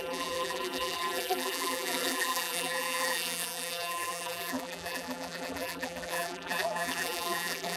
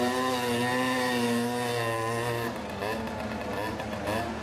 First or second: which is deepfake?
first